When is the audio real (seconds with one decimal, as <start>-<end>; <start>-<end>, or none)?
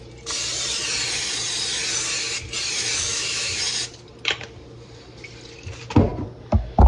0.0-3.1; 3.6-6.9